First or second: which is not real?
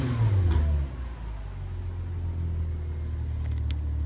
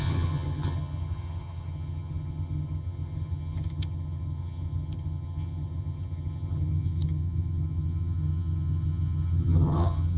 second